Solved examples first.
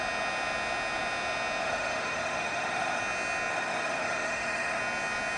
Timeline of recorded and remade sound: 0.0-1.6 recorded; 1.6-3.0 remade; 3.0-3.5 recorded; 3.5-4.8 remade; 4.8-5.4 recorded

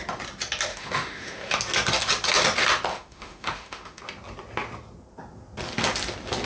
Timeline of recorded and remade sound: 0.0-0.7 recorded; 0.7-1.5 remade; 1.5-2.9 recorded; 2.9-4.0 remade; 4.0-6.5 recorded

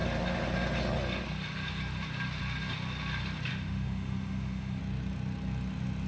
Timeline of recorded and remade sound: 0.0-3.5 recorded; 3.5-4.8 remade; 4.8-6.1 recorded

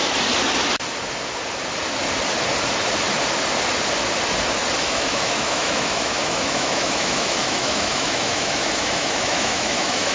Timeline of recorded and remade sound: 0.0-4.8 recorded; 4.8-10.1 remade

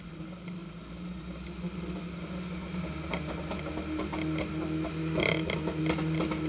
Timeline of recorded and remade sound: 0.0-5.0 recorded; 5.0-5.8 remade; 5.8-6.5 recorded